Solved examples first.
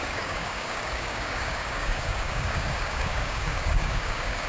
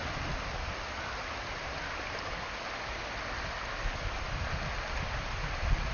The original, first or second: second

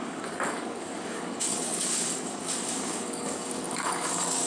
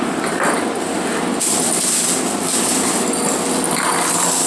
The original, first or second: second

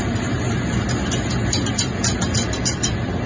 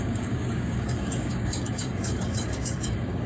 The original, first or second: first